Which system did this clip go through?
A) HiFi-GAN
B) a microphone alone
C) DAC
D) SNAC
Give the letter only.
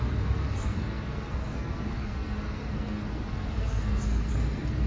D